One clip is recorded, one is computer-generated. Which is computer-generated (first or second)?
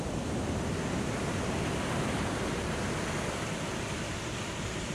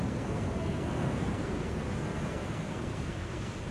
second